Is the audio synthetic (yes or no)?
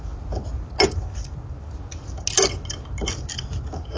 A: no